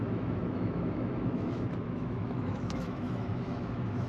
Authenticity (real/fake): fake